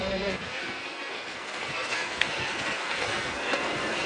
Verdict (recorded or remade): remade